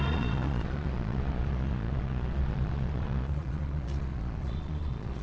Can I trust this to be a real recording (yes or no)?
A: no